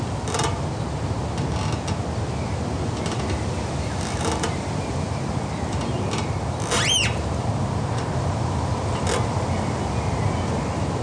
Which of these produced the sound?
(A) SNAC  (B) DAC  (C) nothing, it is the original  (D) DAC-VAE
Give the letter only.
C